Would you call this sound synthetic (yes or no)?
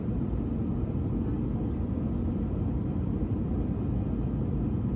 no